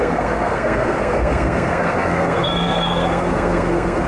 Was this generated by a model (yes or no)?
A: yes